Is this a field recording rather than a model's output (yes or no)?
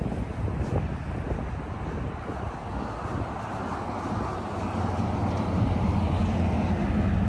yes